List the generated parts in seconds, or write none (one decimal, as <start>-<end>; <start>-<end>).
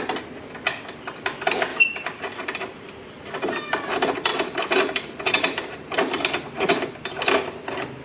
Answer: 1.7-2.9; 4.3-5.9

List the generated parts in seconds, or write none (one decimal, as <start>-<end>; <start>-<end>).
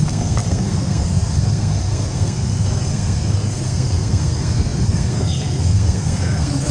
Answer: 0.0-6.7